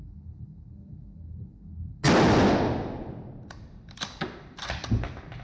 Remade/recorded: recorded